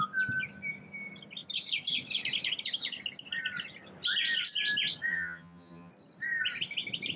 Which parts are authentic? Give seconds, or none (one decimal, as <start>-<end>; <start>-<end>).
0.0-5.1; 5.9-7.2